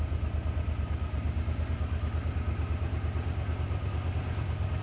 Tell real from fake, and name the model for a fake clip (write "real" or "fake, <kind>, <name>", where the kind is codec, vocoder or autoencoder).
real